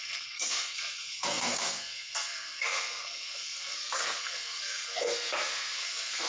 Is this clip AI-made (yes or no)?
yes